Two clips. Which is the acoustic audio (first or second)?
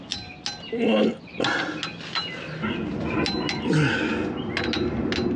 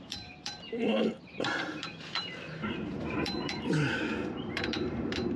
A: first